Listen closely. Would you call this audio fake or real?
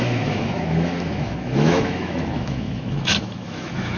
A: fake